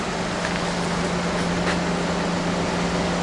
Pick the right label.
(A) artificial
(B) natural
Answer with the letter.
B